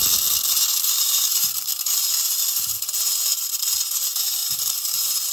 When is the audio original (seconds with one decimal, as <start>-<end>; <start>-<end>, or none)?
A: 0.0-0.5